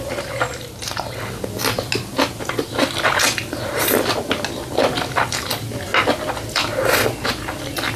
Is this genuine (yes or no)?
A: yes